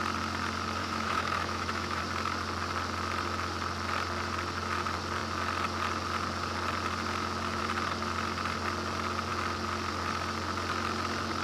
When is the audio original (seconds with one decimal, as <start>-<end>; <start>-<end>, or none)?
0.0-0.8; 2.0-11.4